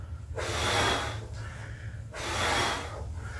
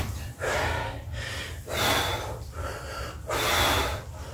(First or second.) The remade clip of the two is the second